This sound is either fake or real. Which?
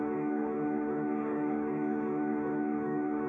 fake